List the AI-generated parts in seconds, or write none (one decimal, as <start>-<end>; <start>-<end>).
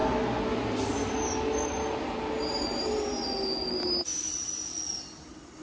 none